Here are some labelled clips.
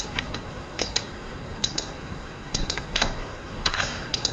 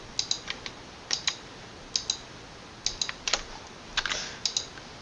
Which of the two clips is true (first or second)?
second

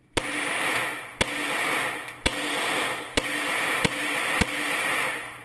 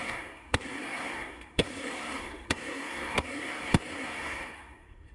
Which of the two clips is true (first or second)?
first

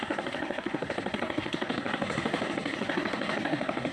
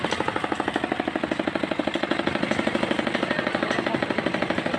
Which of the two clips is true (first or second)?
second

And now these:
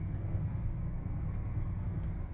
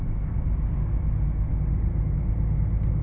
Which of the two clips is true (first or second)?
second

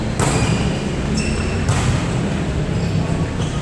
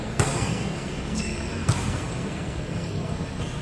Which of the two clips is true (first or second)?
first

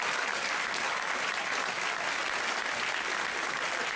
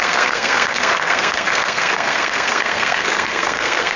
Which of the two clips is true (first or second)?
first